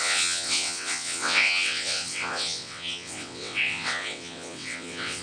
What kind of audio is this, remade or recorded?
remade